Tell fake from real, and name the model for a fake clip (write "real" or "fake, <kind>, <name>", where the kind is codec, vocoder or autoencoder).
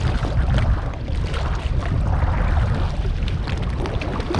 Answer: real